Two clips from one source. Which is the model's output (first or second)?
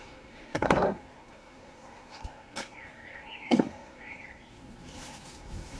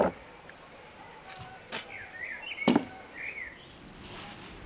first